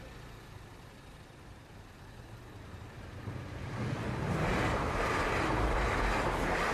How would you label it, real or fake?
fake